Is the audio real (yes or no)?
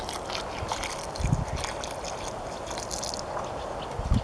yes